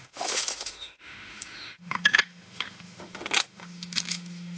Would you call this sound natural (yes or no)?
no